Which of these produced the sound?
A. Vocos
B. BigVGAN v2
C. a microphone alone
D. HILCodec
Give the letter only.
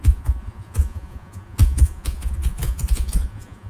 A